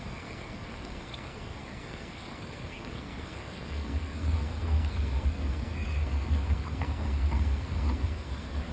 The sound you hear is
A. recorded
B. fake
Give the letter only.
B